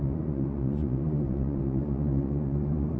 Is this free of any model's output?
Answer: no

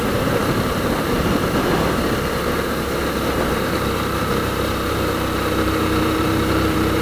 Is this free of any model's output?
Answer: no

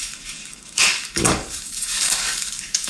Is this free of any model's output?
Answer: no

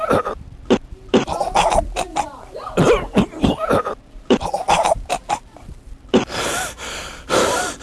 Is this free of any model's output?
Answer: no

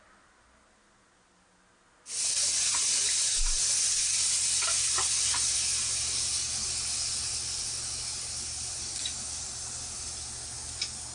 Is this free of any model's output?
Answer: yes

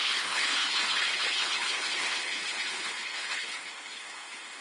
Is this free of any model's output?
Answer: no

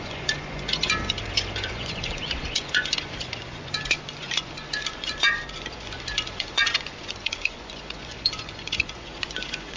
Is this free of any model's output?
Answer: no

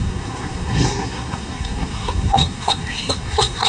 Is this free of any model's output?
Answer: no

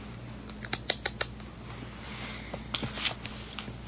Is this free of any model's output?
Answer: yes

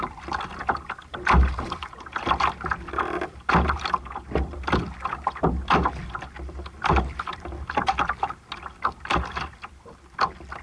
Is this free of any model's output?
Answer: yes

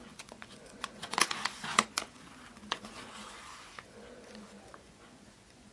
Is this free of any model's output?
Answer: no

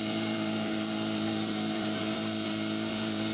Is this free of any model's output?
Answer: no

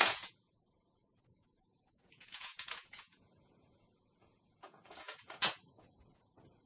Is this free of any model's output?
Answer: no